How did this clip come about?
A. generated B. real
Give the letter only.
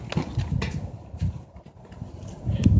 B